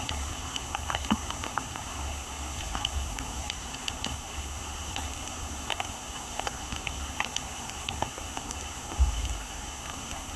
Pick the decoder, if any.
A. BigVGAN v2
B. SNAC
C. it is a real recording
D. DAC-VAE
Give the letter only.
B